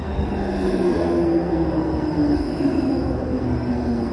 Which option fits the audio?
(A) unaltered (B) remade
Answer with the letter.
B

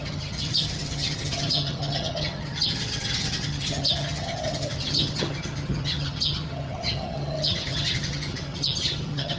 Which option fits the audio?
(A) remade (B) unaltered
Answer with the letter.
A